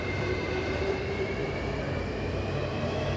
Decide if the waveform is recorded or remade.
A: remade